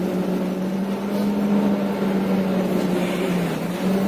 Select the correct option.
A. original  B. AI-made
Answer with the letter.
A